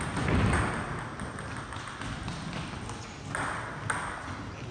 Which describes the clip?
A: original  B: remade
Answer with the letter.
A